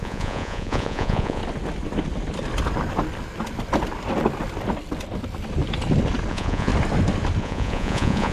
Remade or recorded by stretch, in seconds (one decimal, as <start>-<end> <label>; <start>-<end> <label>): 0.0-1.4 remade; 1.4-6.3 recorded; 6.3-6.7 remade; 6.7-7.4 recorded; 7.4-8.3 remade